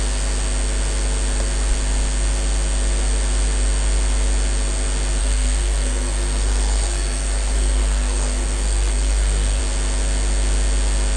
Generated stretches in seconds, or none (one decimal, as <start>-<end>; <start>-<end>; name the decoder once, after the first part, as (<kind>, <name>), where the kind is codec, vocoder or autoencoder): 5.2-9.6 (codec, SNAC)